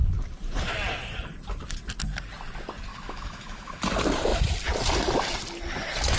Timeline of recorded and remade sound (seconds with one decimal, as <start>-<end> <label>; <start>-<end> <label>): 0.0-2.9 recorded; 2.9-3.8 remade; 3.8-6.2 recorded